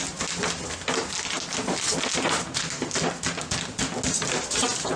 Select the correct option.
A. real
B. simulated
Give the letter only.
A